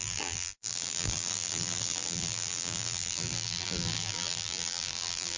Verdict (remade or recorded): remade